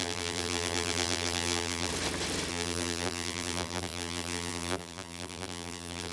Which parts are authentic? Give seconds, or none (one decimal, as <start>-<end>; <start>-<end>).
1.9-2.5